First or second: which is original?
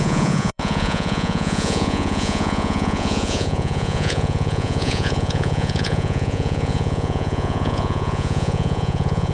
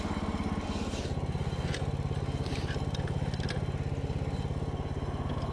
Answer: second